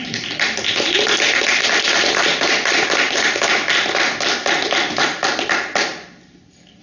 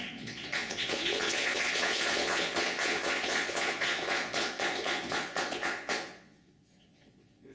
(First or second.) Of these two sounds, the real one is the first